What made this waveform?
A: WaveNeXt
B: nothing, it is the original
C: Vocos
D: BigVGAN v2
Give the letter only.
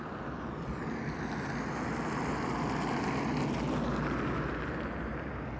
B